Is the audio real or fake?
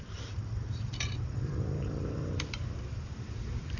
fake